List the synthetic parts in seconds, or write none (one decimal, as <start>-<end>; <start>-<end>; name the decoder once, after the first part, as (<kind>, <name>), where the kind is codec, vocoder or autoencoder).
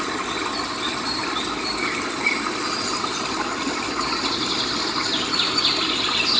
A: none